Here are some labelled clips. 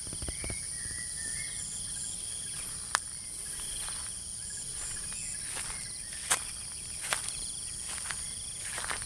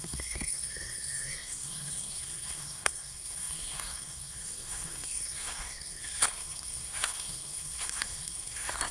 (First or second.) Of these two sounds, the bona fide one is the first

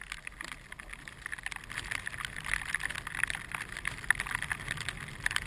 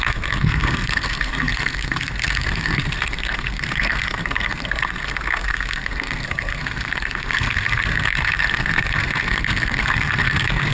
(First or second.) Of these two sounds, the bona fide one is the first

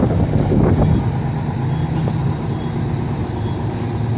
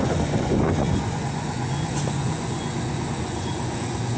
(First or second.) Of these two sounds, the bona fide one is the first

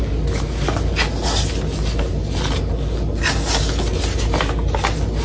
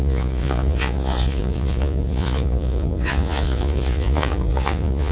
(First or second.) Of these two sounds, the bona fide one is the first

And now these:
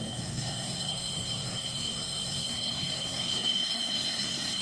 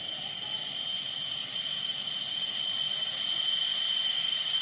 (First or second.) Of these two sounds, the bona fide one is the second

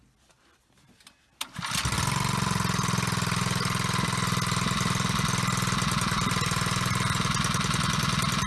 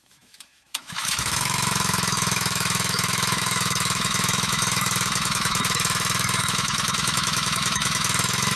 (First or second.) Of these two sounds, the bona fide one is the first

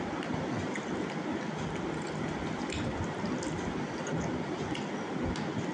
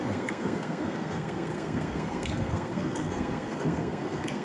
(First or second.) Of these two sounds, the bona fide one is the first